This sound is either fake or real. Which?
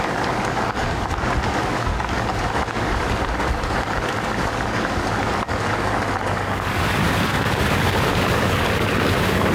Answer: fake